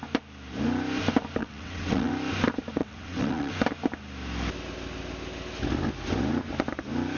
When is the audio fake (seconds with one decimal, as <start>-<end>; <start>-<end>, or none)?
1.4-2.1; 2.8-3.5